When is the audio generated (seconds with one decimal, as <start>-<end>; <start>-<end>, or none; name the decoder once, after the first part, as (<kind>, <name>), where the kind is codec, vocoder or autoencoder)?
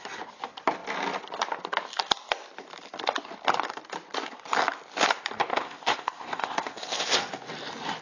5.5-7.2 (codec, ZipCodec)